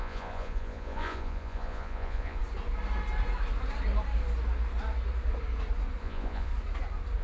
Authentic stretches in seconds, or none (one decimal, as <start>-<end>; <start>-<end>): 2.4-6.0; 6.5-7.2